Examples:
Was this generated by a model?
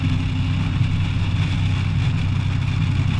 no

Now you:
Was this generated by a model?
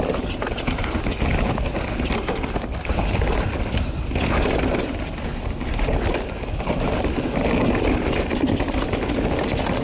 no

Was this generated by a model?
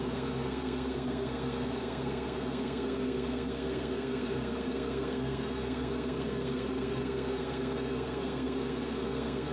yes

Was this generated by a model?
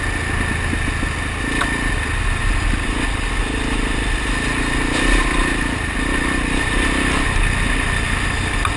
no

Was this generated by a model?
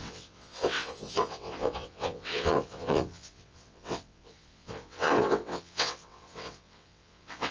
yes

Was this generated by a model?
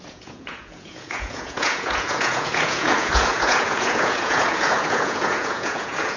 yes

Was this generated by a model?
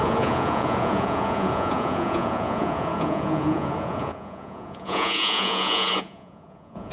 yes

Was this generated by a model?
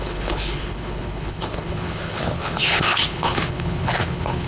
yes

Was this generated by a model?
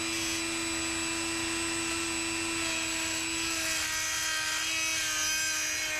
no